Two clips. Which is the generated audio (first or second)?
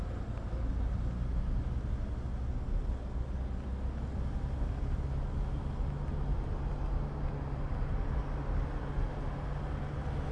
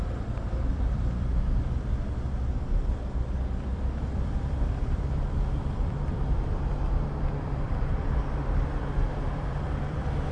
second